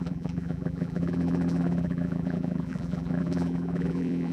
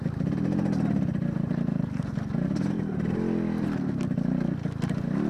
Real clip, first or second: second